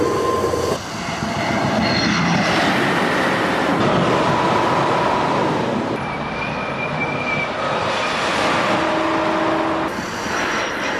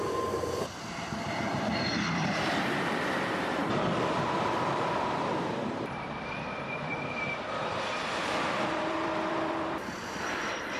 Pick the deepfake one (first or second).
second